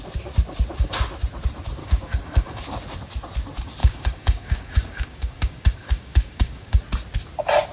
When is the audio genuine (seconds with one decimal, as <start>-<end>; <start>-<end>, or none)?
0.0-1.8; 2.6-3.8; 6.8-7.7